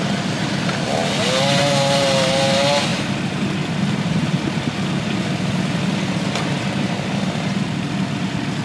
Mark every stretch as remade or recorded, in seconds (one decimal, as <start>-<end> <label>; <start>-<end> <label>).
0.0-8.6 recorded